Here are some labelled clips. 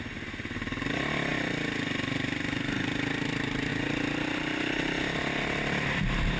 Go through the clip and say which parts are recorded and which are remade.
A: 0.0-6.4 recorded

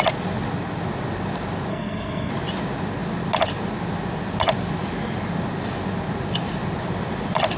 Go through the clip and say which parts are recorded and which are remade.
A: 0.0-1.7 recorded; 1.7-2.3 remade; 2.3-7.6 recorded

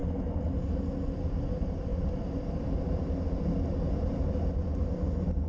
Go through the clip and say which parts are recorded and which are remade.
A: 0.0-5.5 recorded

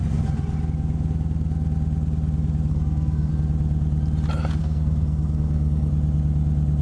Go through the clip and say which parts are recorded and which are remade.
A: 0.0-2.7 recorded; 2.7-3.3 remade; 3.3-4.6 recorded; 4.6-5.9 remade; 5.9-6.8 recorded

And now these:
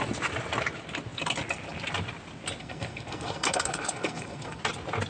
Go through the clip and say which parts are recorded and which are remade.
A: 0.0-2.6 recorded; 2.6-4.6 remade; 4.6-5.1 recorded

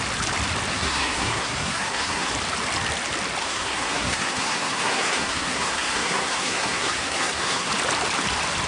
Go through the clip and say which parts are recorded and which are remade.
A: 0.0-0.7 recorded; 0.7-2.3 remade; 2.3-3.4 recorded; 3.4-7.7 remade; 7.7-8.7 recorded

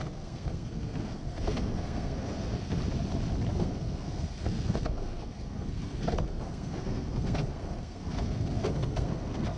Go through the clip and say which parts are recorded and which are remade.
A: 0.0-2.8 remade; 2.8-3.5 recorded; 3.5-9.6 remade

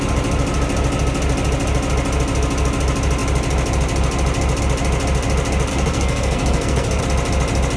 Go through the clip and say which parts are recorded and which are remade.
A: 0.0-5.7 recorded; 5.7-7.0 remade; 7.0-7.8 recorded